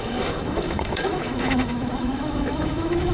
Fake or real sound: fake